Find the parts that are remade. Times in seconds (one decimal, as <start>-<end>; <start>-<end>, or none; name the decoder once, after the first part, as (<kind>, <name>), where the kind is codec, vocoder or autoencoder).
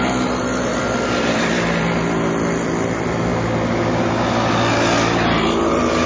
none